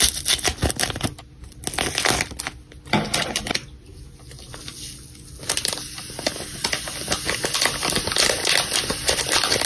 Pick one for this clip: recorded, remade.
recorded